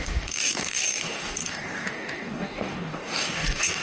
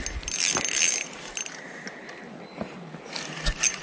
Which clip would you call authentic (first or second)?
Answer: second